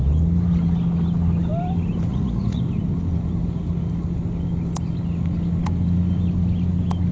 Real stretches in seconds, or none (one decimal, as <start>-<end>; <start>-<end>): 0.0-2.1; 2.6-7.1